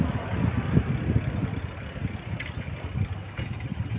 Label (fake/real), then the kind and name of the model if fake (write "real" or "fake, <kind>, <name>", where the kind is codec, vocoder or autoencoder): real